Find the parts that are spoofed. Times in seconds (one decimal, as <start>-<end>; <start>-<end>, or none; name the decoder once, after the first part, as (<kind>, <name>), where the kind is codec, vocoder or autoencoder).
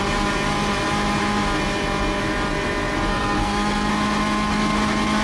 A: 3.1-3.9 (codec, SNAC)